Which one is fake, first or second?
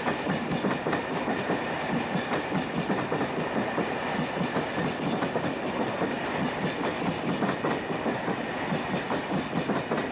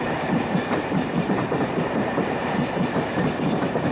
second